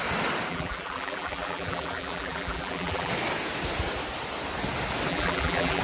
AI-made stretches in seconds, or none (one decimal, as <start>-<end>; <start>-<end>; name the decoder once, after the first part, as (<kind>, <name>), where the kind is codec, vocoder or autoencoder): 0.5-3.1 (vocoder, BigVGAN v2); 5.1-5.8